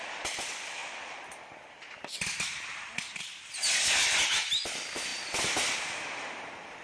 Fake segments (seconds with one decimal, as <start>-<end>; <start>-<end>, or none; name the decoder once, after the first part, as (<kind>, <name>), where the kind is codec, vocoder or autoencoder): none